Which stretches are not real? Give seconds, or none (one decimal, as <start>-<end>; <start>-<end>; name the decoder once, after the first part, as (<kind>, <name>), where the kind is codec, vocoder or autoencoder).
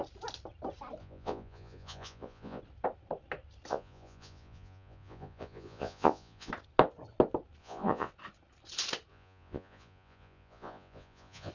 1.0-2.6 (vocoder, Vocos); 3.7-6.5; 7.6-8.1; 9.1-11.5